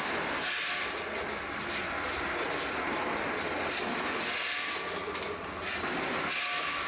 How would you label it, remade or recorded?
recorded